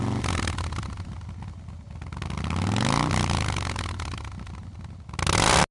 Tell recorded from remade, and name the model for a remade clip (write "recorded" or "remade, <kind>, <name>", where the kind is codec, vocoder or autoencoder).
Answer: recorded